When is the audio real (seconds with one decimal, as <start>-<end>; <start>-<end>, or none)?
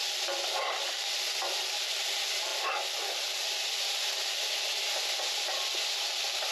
0.0-6.5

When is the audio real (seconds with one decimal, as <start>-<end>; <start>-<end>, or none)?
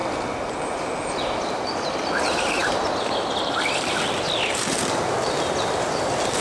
0.0-6.4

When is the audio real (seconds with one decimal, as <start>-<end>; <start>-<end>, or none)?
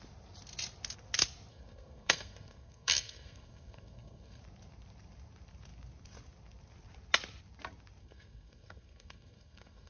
0.0-1.5; 4.4-8.0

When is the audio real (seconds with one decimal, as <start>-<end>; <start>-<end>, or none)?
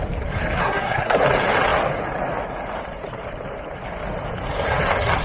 0.0-0.6; 1.2-5.2